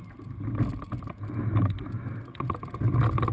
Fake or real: real